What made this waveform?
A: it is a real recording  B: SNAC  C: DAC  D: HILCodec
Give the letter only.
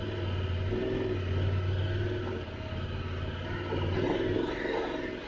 A